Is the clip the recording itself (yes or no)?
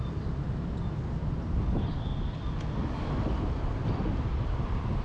yes